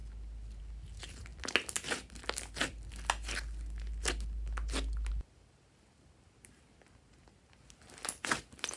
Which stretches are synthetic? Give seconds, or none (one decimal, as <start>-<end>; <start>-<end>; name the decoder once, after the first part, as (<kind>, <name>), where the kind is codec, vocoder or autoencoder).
none